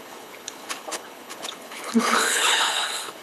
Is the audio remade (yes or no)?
yes